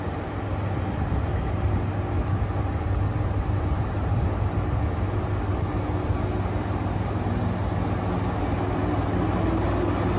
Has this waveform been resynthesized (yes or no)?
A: no